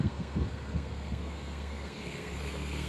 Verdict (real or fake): fake